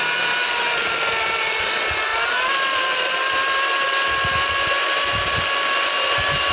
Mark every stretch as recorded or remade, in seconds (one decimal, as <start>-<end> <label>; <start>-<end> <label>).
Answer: 0.0-6.5 recorded